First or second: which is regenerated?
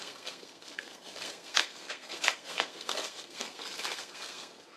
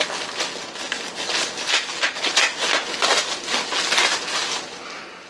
first